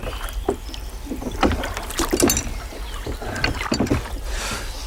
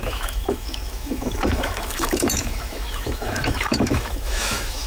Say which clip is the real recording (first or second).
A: first